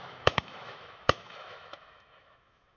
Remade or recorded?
remade